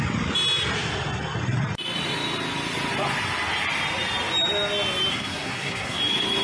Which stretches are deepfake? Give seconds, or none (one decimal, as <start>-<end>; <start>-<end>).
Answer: 5.1-6.0